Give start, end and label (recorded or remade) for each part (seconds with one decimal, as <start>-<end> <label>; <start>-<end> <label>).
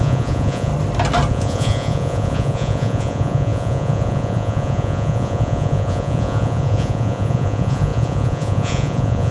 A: 0.0-0.7 remade; 0.7-1.3 recorded; 1.3-9.3 remade